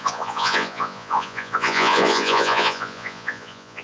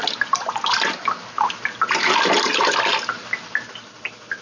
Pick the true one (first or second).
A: second